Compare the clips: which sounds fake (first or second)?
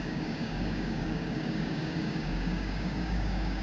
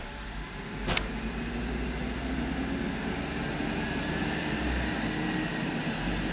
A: first